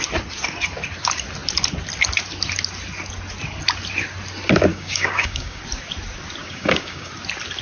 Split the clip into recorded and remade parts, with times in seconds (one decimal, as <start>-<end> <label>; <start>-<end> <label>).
0.0-4.7 recorded; 4.7-5.6 remade; 5.6-6.4 recorded; 6.4-7.1 remade; 7.1-7.6 recorded